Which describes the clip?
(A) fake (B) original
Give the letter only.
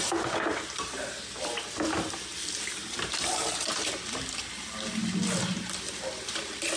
B